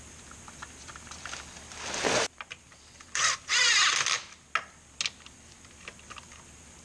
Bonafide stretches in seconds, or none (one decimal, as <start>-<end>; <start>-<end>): 0.0-6.8